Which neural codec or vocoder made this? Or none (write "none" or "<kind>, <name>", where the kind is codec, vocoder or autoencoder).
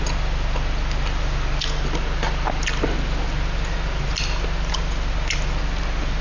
none